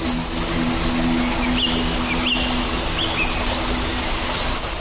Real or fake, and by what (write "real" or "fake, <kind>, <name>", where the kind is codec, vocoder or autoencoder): real